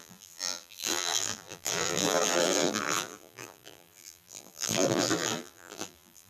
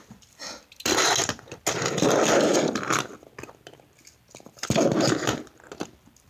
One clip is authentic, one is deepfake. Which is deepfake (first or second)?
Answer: first